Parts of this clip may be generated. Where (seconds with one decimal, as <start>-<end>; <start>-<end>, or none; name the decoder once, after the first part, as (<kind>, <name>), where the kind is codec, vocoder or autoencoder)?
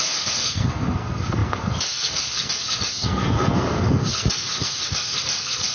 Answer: 0.0-5.7 (codec, SNAC)